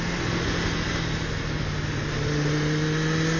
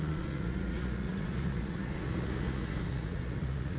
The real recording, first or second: first